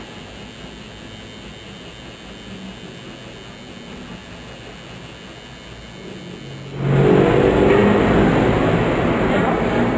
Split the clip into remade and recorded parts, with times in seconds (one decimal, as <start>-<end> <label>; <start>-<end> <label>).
0.0-10.0 recorded